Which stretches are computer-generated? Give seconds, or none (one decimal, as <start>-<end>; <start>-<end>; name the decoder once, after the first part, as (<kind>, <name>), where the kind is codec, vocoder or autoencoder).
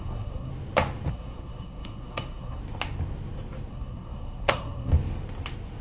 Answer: 0.0-0.5 (codec, SNAC); 1.1-2.6; 3.7-4.9